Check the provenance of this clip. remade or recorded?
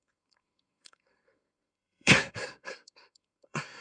remade